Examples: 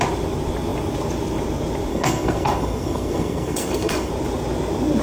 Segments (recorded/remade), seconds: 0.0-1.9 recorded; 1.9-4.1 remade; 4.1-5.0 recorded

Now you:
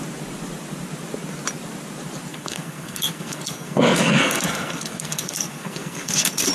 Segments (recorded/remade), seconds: 0.0-2.3 recorded; 2.3-6.5 remade

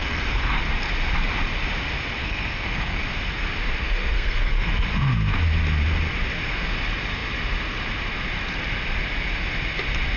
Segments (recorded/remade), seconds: 0.0-0.5 remade; 0.5-2.2 recorded; 2.2-3.0 remade; 3.0-3.8 recorded; 3.8-4.7 remade; 4.7-10.2 recorded

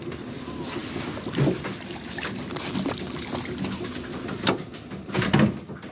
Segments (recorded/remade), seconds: 0.0-5.9 recorded

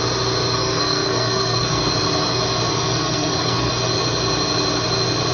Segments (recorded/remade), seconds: 0.0-0.6 recorded; 0.6-1.9 remade; 1.9-2.7 recorded; 2.7-3.7 remade; 3.7-5.3 recorded

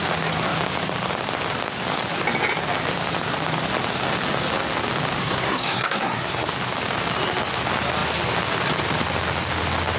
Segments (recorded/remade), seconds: 0.0-5.2 recorded; 5.2-6.5 remade; 6.5-10.0 recorded

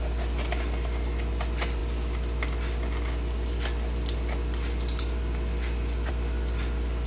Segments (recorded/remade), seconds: 0.0-7.1 recorded